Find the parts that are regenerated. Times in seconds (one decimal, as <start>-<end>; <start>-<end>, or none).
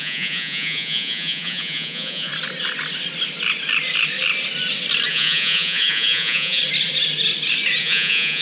0.0-2.3; 5.1-6.6; 7.8-8.4